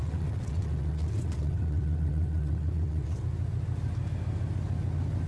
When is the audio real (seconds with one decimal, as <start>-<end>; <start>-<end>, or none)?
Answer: 3.2-5.3